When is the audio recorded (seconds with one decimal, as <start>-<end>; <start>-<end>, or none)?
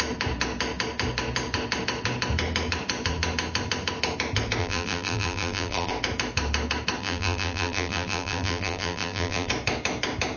0.0-4.6; 5.9-7.0; 9.5-10.4